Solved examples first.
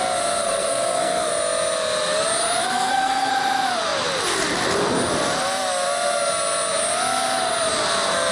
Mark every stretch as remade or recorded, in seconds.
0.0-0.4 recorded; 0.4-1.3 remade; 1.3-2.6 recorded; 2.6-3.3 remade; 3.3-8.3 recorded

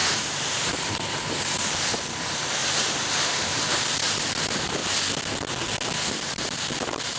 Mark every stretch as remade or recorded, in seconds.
0.0-2.6 remade; 2.6-3.7 recorded; 3.7-4.8 remade; 4.8-6.1 recorded; 6.1-7.2 remade

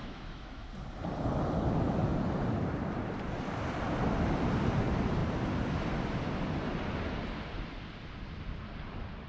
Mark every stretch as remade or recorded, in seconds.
0.0-0.7 remade; 0.7-9.3 recorded

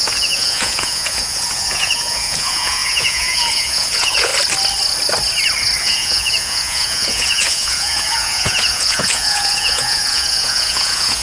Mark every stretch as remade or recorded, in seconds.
0.0-4.3 remade; 4.3-5.8 recorded; 5.8-11.2 remade